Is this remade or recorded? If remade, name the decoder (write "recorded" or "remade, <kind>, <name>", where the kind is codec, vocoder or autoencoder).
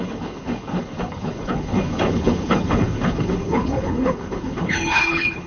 remade, codec, HILCodec